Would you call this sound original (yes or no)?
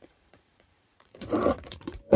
no